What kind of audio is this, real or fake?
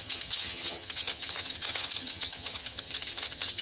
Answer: fake